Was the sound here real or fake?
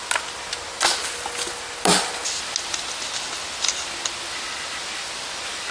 real